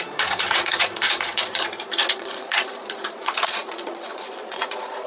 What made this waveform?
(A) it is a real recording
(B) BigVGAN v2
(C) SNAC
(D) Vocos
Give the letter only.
D